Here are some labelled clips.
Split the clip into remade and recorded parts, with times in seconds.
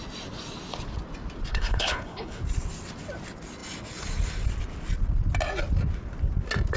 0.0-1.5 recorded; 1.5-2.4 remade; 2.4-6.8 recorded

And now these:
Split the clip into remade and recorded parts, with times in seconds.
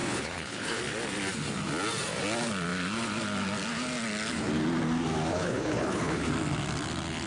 0.0-0.8 remade; 0.8-5.3 recorded; 5.3-6.3 remade; 6.3-7.3 recorded